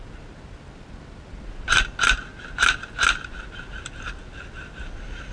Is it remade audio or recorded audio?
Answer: recorded